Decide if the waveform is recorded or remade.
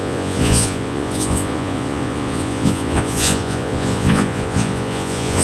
remade